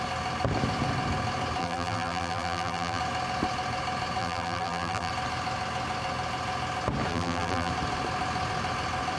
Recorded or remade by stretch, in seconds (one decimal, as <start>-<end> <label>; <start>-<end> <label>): 0.0-1.6 recorded; 1.6-3.0 remade; 3.0-4.2 recorded; 4.2-5.1 remade; 5.1-7.1 recorded; 7.1-7.7 remade; 7.7-9.2 recorded